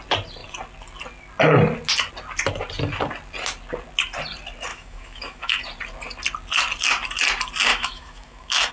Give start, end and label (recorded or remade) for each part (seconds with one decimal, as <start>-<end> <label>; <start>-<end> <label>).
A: 0.0-4.7 recorded; 4.7-5.6 remade; 5.6-7.7 recorded; 7.7-8.7 remade